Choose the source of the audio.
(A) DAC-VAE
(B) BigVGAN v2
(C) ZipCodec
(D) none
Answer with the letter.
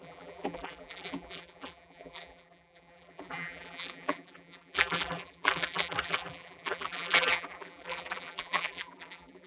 B